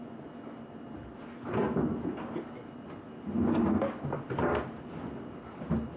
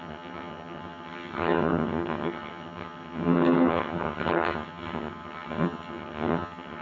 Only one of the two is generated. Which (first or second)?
second